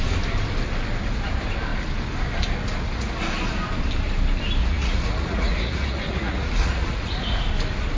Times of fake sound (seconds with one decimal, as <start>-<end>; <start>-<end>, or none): 4.6-7.4